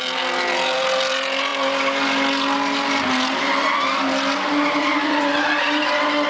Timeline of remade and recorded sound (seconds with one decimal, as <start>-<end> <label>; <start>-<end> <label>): 0.0-6.3 recorded